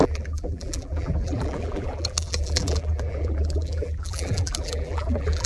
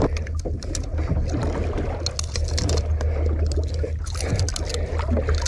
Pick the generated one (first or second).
first